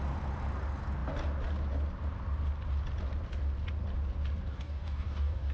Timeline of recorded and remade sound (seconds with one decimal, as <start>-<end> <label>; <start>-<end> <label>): 0.0-4.5 recorded; 4.5-5.5 remade